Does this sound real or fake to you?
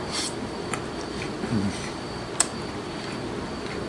fake